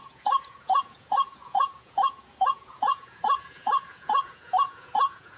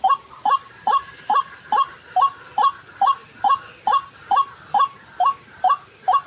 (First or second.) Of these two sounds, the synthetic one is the first